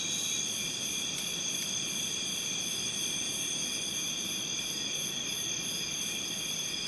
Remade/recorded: recorded